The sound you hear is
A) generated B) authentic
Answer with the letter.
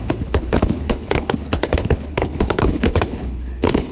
A